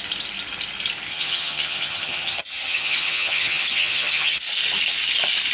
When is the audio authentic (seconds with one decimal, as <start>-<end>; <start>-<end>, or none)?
0.0-1.1; 4.4-5.5